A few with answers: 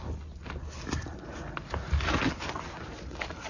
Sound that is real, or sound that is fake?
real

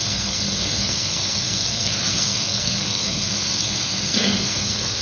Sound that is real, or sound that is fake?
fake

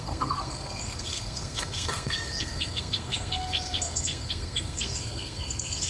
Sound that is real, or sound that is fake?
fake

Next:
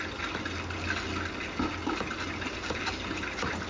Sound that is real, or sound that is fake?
real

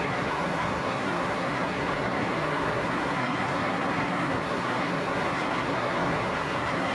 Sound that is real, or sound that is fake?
fake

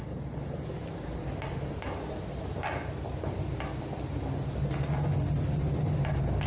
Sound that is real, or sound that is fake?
real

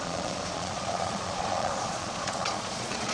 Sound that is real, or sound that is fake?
fake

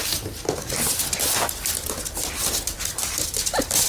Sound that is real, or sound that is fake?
real